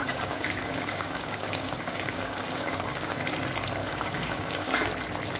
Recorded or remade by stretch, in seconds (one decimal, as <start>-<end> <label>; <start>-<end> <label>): 0.0-3.2 remade; 3.2-3.8 recorded; 3.8-4.9 remade; 4.9-5.4 recorded